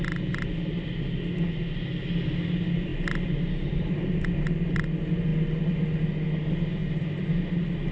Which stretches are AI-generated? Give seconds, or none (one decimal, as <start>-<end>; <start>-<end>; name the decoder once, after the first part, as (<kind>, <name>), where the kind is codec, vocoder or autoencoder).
none